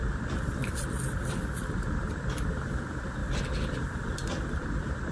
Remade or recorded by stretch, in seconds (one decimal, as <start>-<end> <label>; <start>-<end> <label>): 0.0-3.2 remade; 3.2-3.8 recorded; 3.8-5.1 remade